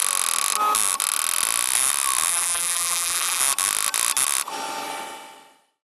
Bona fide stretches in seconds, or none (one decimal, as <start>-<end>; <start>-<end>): 0.0-2.3; 3.4-5.8